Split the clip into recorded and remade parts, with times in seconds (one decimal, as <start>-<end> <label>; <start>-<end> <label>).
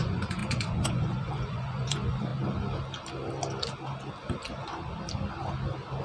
0.0-2.3 remade; 2.3-6.0 recorded